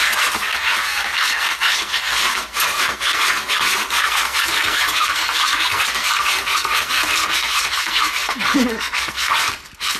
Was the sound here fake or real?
fake